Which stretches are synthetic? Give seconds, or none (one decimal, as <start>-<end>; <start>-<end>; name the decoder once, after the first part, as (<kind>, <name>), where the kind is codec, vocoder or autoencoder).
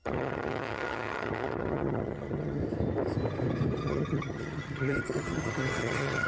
0.0-2.6 (vocoder, HiFi-GAN); 3.8-6.3